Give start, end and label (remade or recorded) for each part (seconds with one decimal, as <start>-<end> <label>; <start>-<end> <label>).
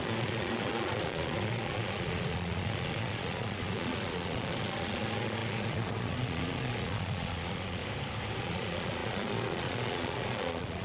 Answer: 0.0-7.8 remade; 7.8-8.4 recorded; 8.4-10.8 remade